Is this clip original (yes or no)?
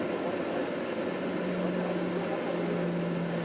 yes